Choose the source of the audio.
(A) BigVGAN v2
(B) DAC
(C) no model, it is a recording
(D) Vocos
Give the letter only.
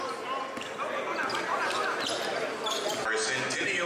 C